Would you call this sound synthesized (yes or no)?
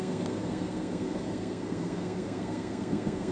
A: yes